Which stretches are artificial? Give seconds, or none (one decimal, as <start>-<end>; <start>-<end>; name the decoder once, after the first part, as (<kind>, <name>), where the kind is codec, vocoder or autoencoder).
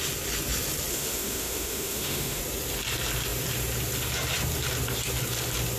0.9-2.4 (autoencoder, DAC-VAE)